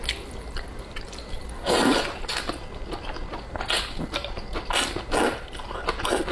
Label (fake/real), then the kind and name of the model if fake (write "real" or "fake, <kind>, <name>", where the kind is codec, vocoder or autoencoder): real